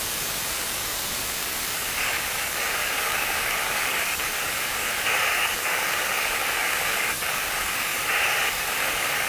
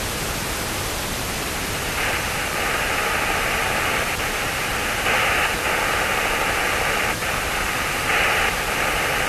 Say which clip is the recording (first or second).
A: second